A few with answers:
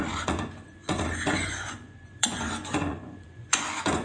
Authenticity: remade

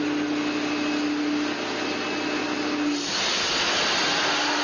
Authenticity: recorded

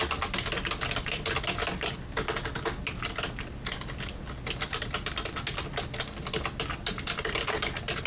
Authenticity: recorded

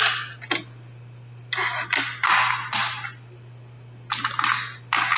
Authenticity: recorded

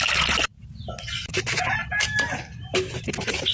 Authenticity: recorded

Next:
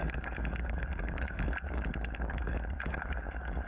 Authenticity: remade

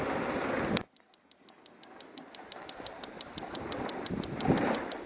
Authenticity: recorded